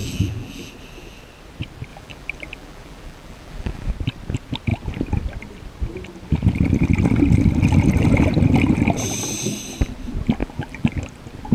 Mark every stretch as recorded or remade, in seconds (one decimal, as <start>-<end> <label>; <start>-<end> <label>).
0.0-0.7 remade; 0.7-1.9 recorded; 1.9-3.9 remade; 3.9-10.4 recorded; 10.4-11.0 remade; 11.0-11.5 recorded